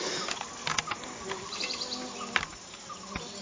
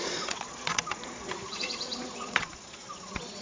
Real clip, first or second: first